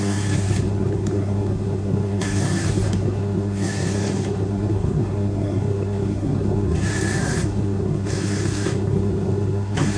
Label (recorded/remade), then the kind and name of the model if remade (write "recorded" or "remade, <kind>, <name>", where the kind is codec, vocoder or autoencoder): remade, codec, SNAC